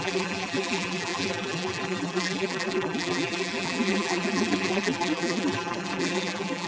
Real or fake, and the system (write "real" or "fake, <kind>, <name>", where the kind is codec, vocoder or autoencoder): fake, vocoder, BigVGAN v2